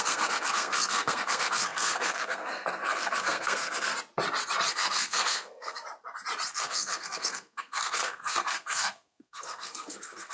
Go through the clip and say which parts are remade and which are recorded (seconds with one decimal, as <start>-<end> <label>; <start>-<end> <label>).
0.0-3.9 remade; 3.9-4.7 recorded; 4.7-5.8 remade; 5.8-6.5 recorded; 6.5-10.3 remade

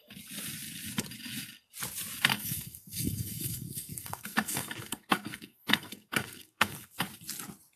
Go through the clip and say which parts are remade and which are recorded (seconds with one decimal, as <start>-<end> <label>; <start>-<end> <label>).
0.0-2.3 recorded; 2.3-7.0 remade; 7.0-7.8 recorded

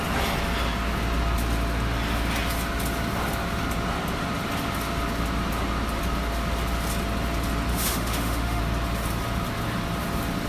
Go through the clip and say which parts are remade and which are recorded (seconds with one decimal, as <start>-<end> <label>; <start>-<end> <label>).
0.0-7.7 recorded; 7.7-8.6 remade; 8.6-10.5 recorded

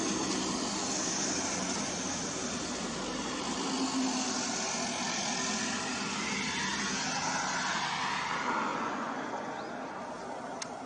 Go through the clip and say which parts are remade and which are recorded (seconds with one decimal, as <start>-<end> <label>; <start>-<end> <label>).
0.0-8.7 recorded; 8.7-9.5 remade; 9.5-10.9 recorded

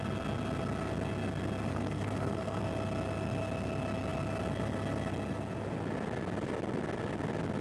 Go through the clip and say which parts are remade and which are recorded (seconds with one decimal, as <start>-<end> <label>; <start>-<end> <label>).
0.0-1.7 recorded; 1.7-2.6 remade; 2.6-7.6 recorded

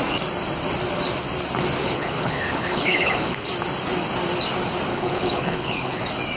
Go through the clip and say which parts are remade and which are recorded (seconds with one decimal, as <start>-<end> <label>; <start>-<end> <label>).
0.0-1.8 recorded; 1.8-3.5 remade; 3.5-4.9 recorded; 4.9-6.0 remade; 6.0-6.4 recorded